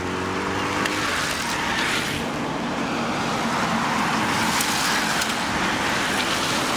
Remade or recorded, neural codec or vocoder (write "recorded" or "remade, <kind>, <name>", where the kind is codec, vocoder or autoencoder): recorded